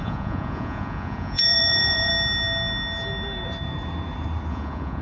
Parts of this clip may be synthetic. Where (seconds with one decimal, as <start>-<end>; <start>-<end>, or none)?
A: 0.0-2.1; 4.5-5.0

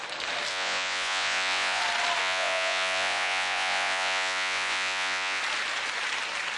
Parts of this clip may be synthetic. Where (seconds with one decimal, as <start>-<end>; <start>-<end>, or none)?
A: 0.5-1.8; 2.2-5.4

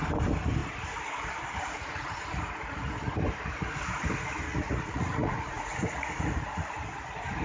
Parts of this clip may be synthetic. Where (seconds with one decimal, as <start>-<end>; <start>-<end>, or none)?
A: 4.5-6.2

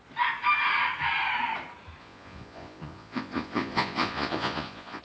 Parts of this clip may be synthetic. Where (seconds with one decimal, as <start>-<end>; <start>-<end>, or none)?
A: 2.0-5.0

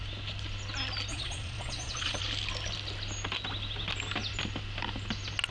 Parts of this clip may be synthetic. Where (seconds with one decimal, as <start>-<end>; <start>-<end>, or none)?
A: 1.1-2.2